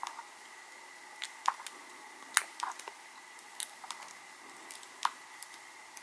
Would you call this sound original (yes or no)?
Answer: yes